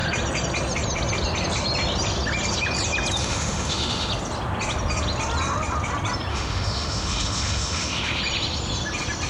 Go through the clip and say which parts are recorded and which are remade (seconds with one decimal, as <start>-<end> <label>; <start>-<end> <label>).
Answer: 0.0-3.2 recorded; 3.2-4.1 remade; 4.1-6.3 recorded; 6.3-8.2 remade; 8.2-9.3 recorded